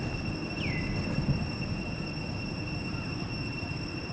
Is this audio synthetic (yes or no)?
yes